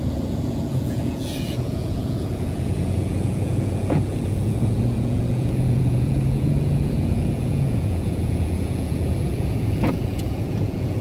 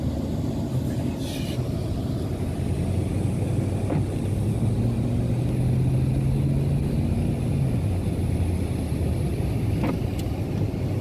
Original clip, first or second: second